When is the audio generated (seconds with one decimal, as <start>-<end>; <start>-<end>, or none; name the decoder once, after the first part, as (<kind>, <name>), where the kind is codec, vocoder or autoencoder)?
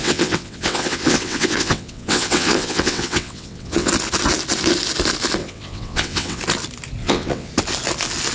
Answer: 0.0-3.9 (vocoder, WaveNeXt); 5.4-6.4; 7.0-7.5